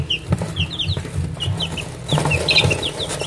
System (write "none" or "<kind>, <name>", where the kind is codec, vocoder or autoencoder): none